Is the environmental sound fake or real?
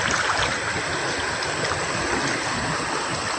real